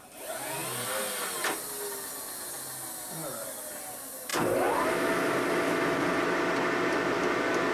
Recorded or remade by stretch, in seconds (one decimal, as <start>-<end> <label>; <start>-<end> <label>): 0.0-7.7 recorded